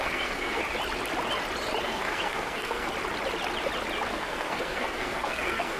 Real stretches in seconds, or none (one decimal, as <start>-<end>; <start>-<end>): 0.6-1.8; 2.9-4.1